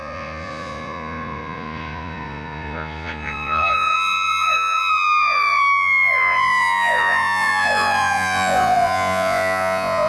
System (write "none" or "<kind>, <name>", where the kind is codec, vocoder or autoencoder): vocoder, Vocos